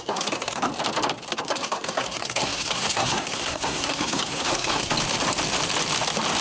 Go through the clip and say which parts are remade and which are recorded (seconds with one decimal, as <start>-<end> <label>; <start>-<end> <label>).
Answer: 0.0-0.7 remade; 0.7-1.4 recorded; 1.4-4.9 remade; 4.9-6.4 recorded